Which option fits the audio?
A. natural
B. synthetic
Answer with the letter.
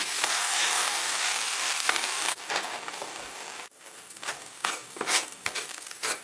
B